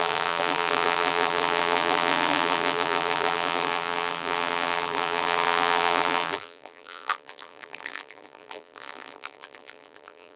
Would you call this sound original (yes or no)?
no